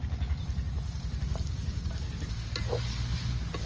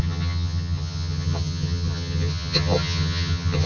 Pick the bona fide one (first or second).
first